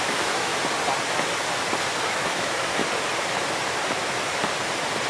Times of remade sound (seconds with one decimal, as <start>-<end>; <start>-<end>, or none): 0.0-0.5; 2.1-2.8